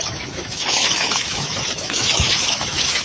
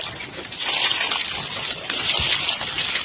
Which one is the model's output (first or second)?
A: first